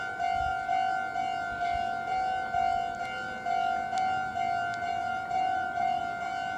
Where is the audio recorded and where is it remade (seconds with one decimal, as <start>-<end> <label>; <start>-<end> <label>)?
0.0-4.9 recorded; 4.9-6.0 remade; 6.0-6.6 recorded